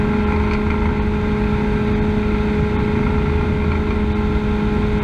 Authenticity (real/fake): real